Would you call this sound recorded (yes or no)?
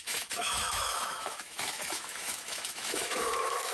no